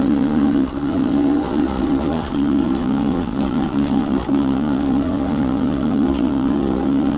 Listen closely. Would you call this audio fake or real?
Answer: fake